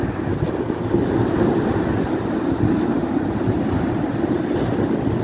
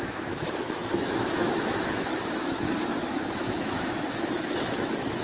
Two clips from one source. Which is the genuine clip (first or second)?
first